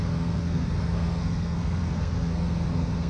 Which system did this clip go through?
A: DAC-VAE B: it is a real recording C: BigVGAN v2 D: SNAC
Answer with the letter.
D